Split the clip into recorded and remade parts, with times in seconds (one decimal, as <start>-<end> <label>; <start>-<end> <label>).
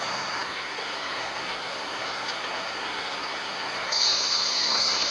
0.0-5.1 remade